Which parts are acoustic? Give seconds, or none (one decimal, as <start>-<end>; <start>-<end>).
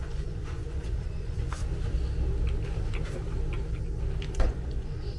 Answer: 1.6-4.4